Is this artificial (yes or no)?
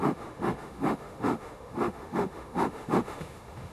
yes